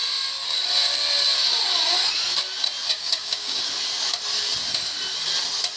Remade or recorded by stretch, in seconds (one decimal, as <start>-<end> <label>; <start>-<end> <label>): 0.0-2.9 recorded; 2.9-3.7 remade; 3.7-5.8 recorded